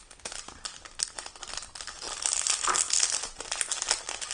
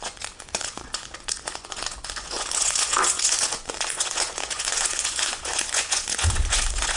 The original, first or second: first